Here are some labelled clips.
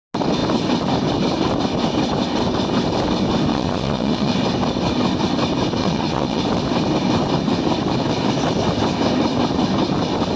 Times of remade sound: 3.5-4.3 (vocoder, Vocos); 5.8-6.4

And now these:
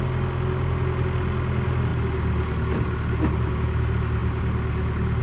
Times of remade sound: none